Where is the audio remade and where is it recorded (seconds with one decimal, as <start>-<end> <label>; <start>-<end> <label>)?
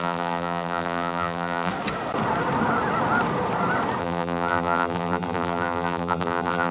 0.0-1.7 remade; 1.7-4.0 recorded; 4.0-6.7 remade